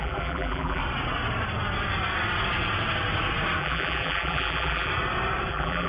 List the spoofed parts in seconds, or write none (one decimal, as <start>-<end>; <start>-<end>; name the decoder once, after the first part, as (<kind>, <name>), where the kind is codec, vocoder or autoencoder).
0.0-0.8 (vocoder, BigVGAN v2); 3.6-4.9; 5.5-5.9